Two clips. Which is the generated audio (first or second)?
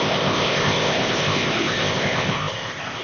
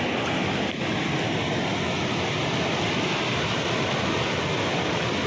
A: first